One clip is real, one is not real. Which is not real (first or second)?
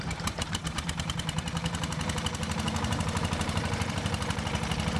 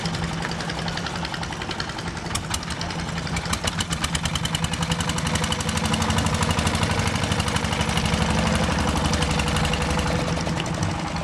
first